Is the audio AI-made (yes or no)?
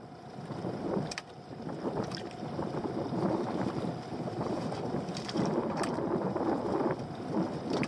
no